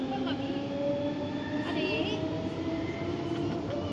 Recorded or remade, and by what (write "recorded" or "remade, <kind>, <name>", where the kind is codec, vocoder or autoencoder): recorded